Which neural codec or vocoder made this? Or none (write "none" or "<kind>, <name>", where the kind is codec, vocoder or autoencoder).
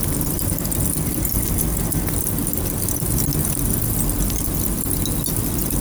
none